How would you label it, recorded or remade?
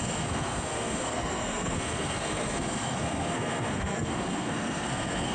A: remade